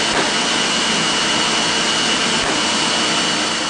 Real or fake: real